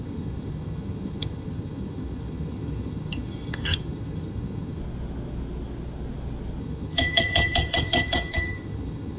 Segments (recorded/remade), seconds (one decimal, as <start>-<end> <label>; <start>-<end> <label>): 0.0-4.8 remade; 4.8-6.6 recorded; 6.6-9.2 remade